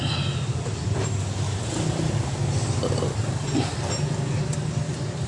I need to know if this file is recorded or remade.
recorded